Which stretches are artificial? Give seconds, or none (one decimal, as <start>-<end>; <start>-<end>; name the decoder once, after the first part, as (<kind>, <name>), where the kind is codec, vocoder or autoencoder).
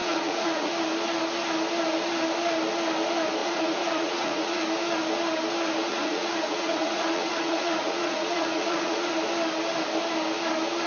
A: 0.0-0.7 (vocoder, Vocos); 3.4-4.6; 5.9-9.1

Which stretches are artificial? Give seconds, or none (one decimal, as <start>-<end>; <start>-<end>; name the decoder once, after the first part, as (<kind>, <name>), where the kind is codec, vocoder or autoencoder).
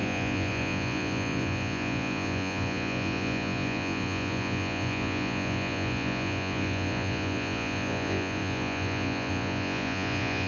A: 0.0-10.5 (vocoder, Vocos)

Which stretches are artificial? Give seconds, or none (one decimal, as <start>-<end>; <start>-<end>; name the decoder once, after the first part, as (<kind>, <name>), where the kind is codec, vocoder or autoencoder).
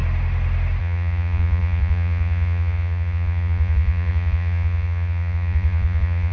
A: 0.8-6.3 (vocoder, Vocos)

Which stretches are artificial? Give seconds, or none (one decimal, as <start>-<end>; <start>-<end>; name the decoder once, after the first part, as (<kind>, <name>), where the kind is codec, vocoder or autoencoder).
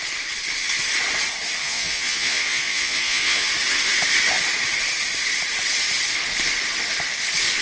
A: 1.6-3.5 (vocoder, Vocos)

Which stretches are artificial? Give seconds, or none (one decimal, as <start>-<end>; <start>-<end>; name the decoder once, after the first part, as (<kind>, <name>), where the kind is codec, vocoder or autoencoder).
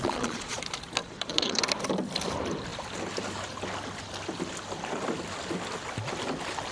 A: 0.0-0.6 (vocoder, Vocos); 1.0-1.6